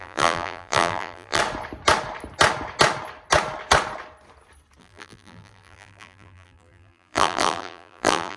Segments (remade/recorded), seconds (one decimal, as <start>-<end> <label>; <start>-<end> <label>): 0.0-1.4 remade; 1.4-4.8 recorded; 4.8-8.4 remade